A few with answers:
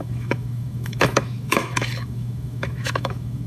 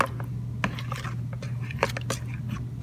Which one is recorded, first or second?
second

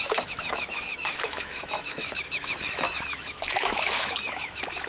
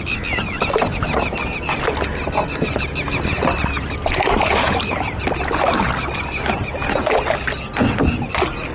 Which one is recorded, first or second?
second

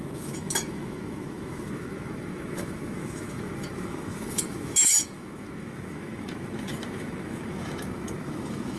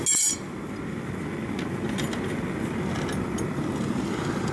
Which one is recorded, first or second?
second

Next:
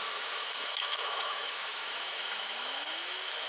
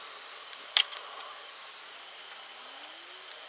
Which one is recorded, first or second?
second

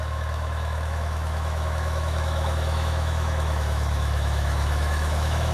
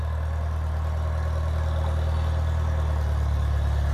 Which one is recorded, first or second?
second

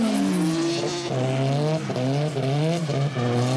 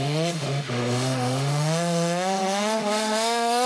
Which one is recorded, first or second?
first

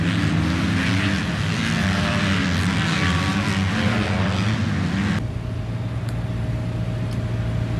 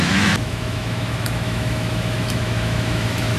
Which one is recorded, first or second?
first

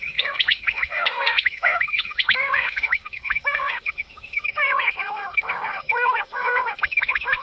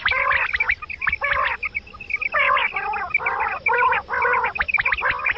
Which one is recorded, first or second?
second